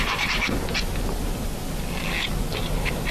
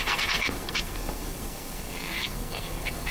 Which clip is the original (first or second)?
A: first